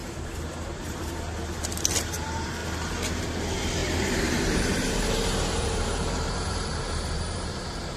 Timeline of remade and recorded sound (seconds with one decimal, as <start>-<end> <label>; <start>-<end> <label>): 0.0-1.1 remade; 1.1-3.8 recorded; 3.8-8.0 remade